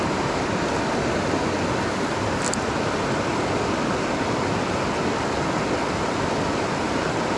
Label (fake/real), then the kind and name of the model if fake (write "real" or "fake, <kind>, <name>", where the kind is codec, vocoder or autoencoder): real